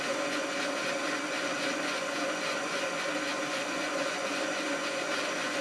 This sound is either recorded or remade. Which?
remade